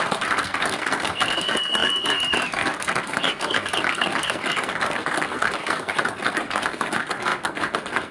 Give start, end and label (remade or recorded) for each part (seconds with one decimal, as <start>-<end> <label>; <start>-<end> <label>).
0.0-8.1 remade